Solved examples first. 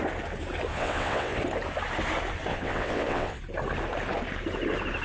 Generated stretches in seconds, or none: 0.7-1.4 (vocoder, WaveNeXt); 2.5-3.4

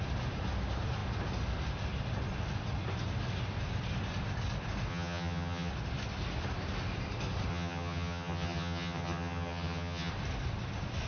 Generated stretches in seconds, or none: 4.9-5.7 (vocoder, HiFi-GAN); 7.5-10.1

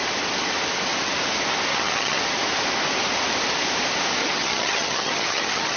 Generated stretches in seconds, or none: 1.7-2.2 (vocoder, HiFi-GAN); 4.2-5.8